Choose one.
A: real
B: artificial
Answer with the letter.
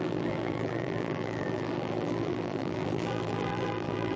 B